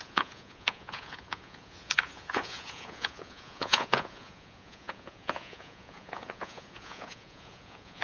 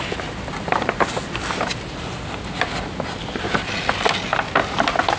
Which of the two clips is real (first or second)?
second